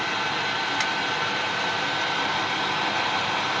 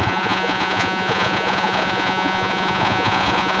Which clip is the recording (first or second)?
first